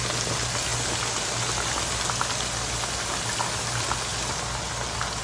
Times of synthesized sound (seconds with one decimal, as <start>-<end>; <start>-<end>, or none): none